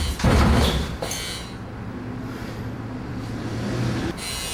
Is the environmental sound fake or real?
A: fake